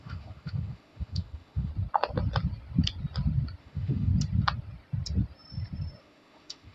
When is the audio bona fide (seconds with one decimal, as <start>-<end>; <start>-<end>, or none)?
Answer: 1.7-3.6; 4.1-6.0